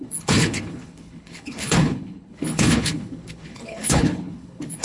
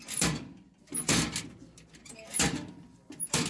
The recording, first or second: second